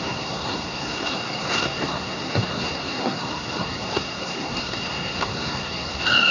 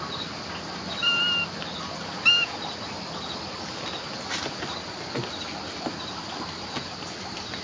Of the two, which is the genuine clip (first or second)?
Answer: second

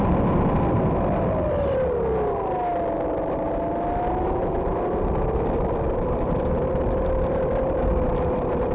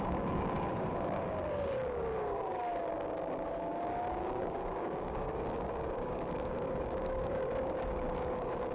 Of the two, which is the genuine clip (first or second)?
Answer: first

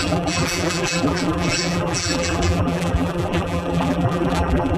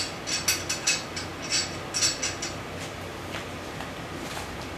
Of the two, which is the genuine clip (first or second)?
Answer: second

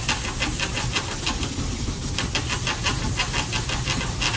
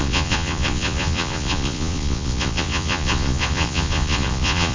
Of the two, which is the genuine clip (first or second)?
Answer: first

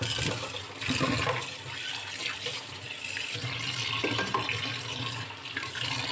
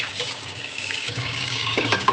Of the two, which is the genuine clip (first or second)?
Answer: first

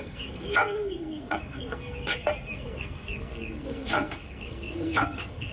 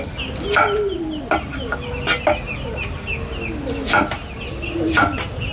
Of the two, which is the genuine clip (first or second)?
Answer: second